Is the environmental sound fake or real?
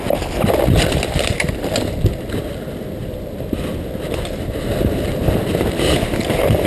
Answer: real